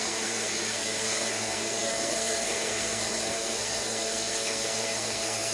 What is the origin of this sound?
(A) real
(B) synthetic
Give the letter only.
B